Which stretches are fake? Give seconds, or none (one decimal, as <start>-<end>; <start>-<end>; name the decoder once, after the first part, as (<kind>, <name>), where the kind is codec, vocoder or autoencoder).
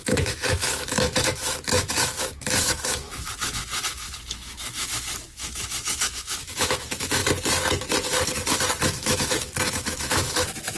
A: 0.0-7.2 (autoencoder, DAC-VAE); 8.8-10.8